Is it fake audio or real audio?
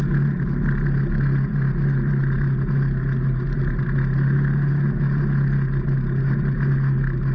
real